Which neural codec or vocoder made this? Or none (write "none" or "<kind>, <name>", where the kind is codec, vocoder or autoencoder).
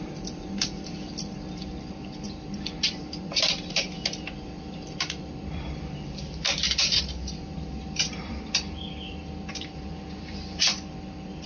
vocoder, BigVGAN v2